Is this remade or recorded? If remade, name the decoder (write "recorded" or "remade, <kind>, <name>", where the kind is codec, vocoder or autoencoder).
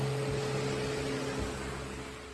recorded